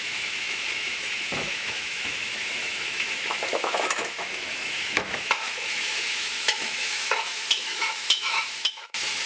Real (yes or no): no